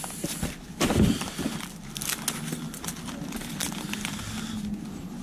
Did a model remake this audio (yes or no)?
no